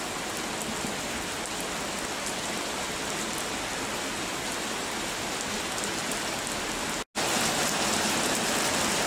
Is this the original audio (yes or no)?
yes